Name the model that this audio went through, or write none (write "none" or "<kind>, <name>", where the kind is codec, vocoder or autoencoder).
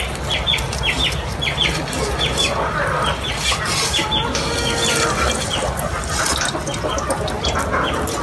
none